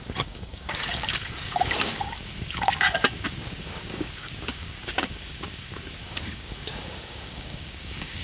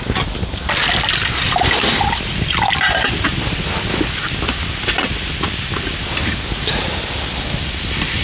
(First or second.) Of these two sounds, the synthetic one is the first